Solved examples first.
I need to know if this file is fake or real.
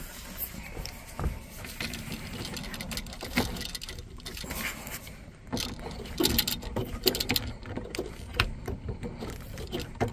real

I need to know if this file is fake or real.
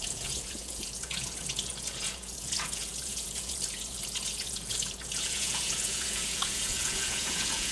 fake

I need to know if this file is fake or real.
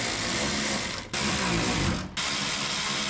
real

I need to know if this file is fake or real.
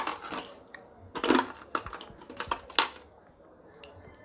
real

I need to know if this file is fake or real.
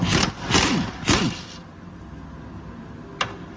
real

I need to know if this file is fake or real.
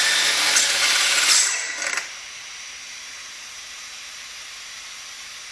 real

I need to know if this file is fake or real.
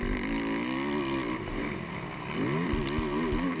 real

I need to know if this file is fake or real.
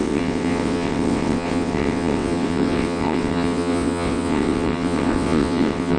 fake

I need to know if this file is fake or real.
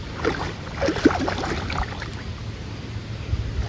real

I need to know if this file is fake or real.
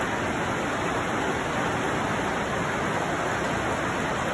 real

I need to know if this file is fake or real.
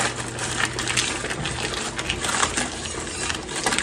real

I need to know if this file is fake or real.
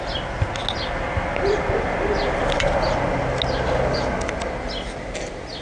real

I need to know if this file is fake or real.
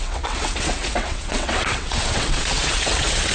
fake